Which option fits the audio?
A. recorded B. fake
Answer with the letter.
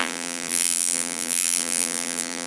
B